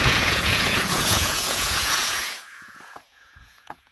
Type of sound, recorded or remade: remade